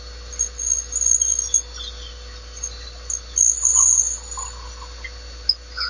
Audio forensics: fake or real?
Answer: real